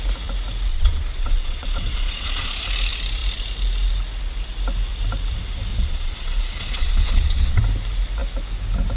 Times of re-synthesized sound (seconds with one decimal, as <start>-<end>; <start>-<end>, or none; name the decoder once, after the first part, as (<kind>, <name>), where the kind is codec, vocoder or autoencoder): 0.7-2.6 (vocoder, Vocos); 5.7-7.6